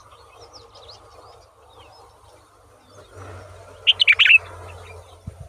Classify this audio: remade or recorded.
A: recorded